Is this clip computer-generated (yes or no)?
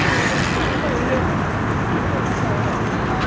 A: no